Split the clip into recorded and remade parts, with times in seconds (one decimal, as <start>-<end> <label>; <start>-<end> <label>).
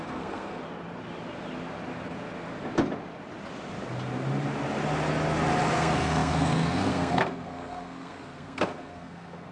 0.0-0.6 remade; 0.6-5.7 recorded; 5.7-9.5 remade